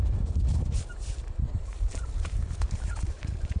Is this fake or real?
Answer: fake